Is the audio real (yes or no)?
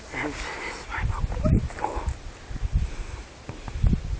yes